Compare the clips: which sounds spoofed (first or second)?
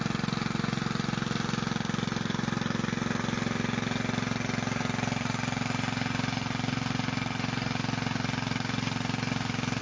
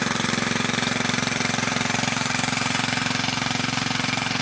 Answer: second